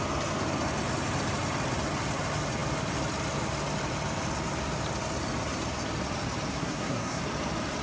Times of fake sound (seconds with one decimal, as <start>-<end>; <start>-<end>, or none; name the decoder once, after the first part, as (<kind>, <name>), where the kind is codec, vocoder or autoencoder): 6.5-7.2 (codec, SNAC)